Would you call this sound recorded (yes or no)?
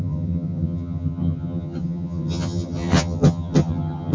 no